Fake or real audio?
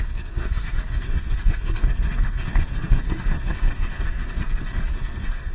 fake